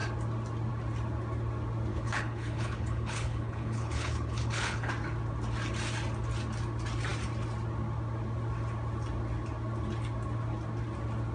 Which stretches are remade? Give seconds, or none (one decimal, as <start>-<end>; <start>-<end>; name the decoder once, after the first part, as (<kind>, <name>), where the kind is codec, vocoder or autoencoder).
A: 1.9-4.9 (codec, HILCodec)